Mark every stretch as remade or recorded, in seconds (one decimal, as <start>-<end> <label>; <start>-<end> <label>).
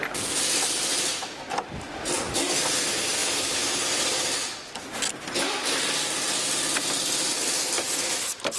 0.0-3.2 remade; 3.2-8.0 recorded; 8.0-8.6 remade